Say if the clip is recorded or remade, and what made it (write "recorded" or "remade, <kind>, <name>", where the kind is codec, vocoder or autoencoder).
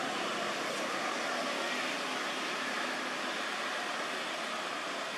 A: recorded